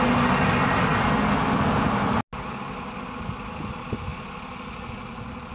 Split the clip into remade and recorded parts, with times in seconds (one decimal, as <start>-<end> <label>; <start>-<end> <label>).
0.0-5.5 recorded